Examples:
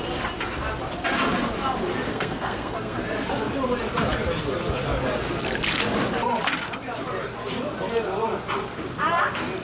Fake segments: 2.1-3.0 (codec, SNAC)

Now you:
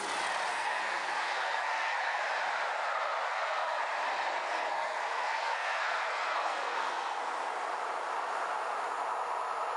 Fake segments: 0.5-2.2 (codec, SNAC); 3.3-3.8; 4.4-7.2

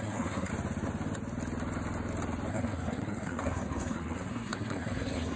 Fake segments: 0.0-0.5 (codec, SNAC); 2.5-5.4

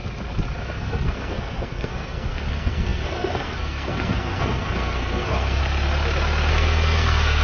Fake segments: 0.6-5.6 (codec, SNAC); 6.5-7.4

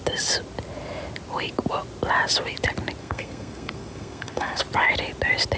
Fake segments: 3.0-4.6 (codec, SNAC)